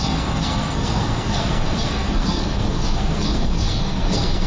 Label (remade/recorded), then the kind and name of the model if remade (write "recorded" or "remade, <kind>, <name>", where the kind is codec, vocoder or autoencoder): remade, codec, SNAC